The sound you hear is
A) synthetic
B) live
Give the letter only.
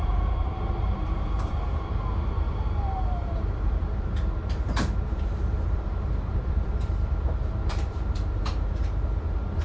A